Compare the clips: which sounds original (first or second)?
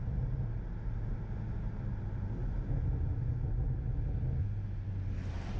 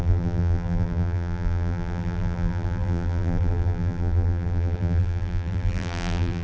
first